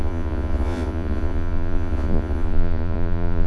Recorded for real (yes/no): no